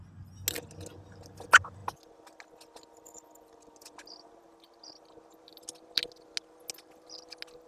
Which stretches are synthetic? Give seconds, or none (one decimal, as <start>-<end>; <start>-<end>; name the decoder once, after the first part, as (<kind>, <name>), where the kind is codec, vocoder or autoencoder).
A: none